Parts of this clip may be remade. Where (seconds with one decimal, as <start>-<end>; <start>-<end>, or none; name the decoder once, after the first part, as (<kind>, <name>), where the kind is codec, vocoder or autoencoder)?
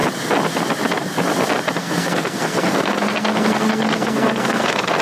1.8-5.0 (codec, SNAC)